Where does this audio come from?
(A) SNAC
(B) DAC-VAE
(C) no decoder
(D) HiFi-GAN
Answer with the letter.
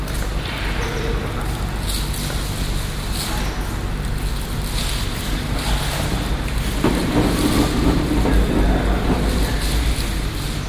C